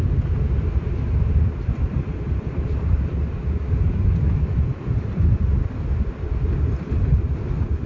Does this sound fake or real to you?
real